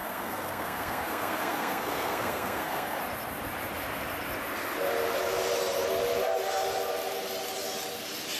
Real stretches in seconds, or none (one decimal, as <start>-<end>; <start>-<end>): 3.0-8.4